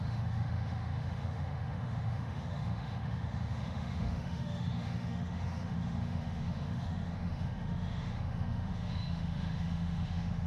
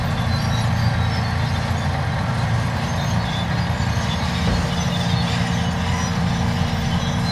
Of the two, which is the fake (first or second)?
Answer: first